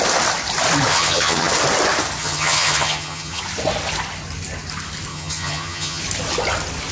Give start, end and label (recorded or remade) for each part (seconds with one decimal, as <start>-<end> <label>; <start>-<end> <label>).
0.0-0.9 recorded; 0.9-1.5 remade; 1.5-2.2 recorded; 2.2-3.4 remade; 3.4-5.1 recorded; 5.1-6.0 remade; 6.0-6.9 recorded